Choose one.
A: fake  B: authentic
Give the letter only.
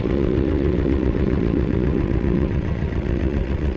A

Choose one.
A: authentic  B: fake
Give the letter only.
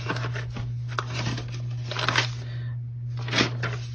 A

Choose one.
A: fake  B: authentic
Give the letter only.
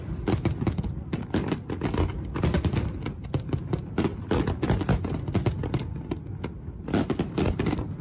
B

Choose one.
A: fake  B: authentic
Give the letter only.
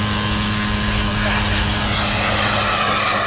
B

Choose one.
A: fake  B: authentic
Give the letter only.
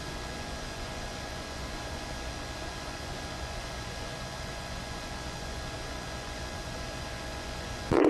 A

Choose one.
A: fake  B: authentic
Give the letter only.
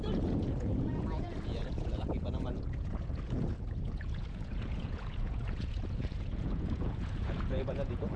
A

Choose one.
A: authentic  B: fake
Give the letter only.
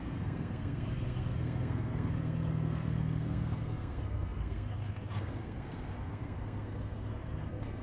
B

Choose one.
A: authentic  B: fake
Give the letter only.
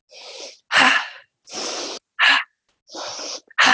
A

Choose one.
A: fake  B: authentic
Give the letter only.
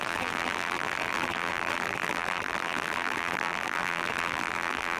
A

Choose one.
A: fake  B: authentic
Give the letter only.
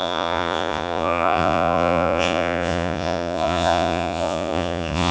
A